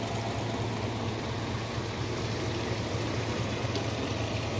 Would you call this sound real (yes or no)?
yes